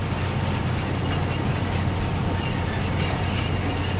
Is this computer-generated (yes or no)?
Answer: no